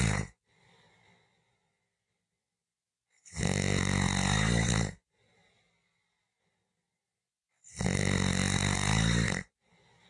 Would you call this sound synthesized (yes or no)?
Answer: no